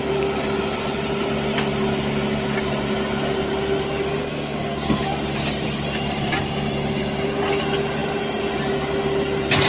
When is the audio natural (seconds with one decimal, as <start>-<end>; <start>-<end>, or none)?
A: 0.0-4.2; 5.0-9.7